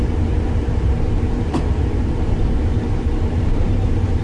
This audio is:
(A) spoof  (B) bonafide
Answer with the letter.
A